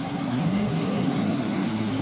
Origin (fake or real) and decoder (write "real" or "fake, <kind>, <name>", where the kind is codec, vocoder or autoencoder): fake, codec, SNAC